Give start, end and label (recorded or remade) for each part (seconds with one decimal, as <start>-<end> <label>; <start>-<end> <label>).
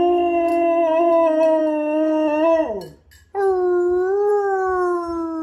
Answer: 0.0-5.4 recorded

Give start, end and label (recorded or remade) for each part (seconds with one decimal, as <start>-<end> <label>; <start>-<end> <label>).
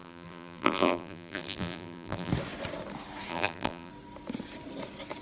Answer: 0.0-2.3 remade; 2.3-3.3 recorded; 3.3-3.9 remade; 3.9-5.2 recorded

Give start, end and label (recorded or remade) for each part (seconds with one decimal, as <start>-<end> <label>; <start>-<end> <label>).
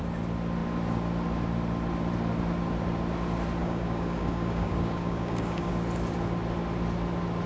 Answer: 0.0-3.6 recorded; 3.6-5.7 remade; 5.7-7.5 recorded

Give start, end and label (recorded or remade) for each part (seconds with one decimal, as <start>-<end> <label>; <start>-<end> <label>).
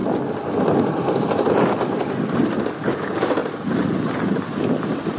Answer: 0.0-3.4 recorded; 3.4-4.0 remade; 4.0-5.2 recorded